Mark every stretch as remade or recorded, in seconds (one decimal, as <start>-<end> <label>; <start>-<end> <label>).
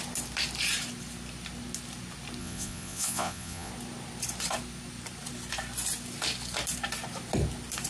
0.0-2.4 recorded; 2.4-3.7 remade; 3.7-7.9 recorded